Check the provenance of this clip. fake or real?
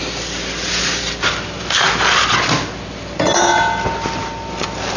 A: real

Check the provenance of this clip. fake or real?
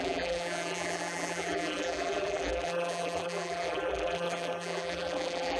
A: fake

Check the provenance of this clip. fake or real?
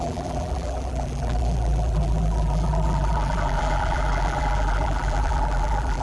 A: fake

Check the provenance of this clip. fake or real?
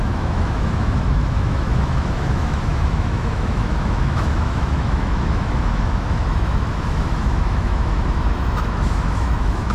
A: fake